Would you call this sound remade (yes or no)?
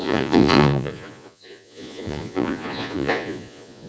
yes